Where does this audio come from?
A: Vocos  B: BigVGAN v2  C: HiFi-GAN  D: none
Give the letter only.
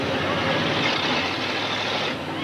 D